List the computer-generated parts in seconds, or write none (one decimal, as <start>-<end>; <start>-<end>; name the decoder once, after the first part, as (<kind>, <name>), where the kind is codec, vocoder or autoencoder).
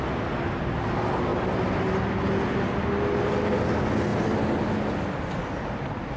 none